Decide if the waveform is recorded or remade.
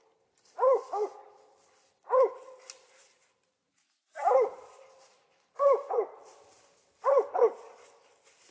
recorded